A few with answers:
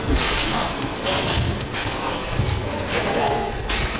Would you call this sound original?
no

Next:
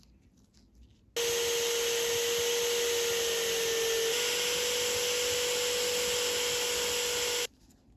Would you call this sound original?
yes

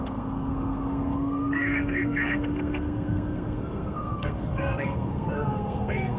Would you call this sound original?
no